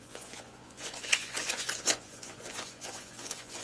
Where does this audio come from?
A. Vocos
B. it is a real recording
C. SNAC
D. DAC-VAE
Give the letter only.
A